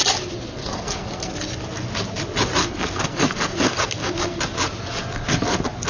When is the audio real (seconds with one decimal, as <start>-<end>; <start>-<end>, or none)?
0.0-0.6; 1.3-2.6; 4.4-5.9